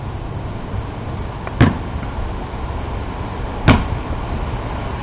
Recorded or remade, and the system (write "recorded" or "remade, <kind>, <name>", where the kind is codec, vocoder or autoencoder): recorded